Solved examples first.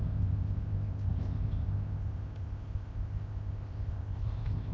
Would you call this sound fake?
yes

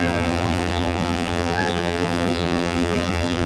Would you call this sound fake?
yes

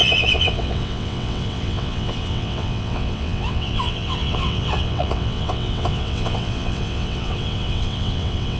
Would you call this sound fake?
yes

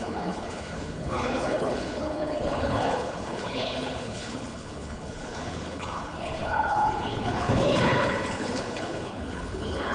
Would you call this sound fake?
yes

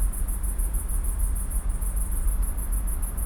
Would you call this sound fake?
no